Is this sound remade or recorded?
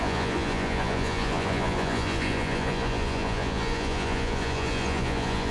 remade